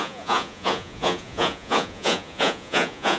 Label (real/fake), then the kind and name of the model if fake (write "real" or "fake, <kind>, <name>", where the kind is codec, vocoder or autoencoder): fake, vocoder, Vocos